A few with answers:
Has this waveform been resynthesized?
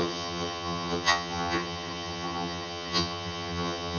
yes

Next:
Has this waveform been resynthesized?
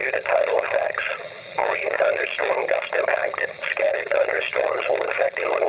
yes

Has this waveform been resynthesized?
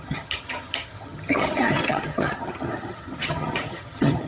yes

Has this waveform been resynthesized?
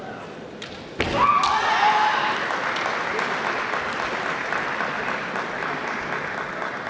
no